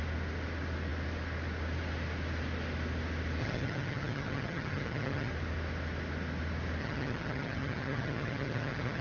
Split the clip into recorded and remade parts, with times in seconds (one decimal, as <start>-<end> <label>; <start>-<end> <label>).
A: 0.0-3.4 recorded; 3.4-5.3 remade; 5.3-6.8 recorded; 6.8-9.0 remade